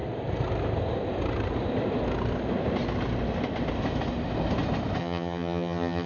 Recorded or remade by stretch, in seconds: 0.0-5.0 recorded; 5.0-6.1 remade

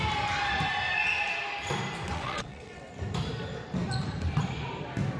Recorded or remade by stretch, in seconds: 0.0-2.1 recorded; 2.1-2.9 remade; 2.9-5.2 recorded

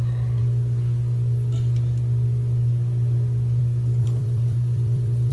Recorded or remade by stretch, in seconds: 0.0-4.0 recorded; 4.0-5.3 remade

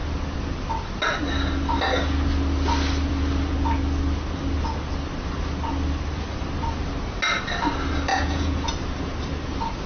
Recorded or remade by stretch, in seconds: 0.0-8.1 recorded; 8.1-8.7 remade; 8.7-9.9 recorded

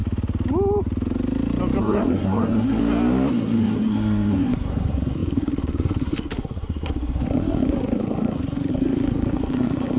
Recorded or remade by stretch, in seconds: 0.0-1.8 recorded; 1.8-2.8 remade; 2.8-3.3 recorded; 3.3-10.0 remade

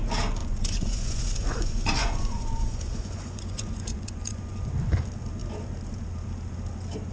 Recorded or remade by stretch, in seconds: 0.0-0.4 recorded; 0.4-4.7 remade; 4.7-7.1 recorded

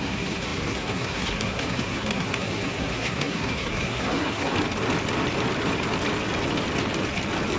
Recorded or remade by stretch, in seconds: 0.0-4.5 remade; 4.5-7.6 recorded

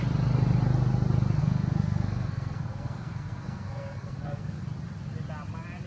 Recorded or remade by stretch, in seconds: 0.0-1.4 recorded; 1.4-4.6 remade; 4.6-5.9 recorded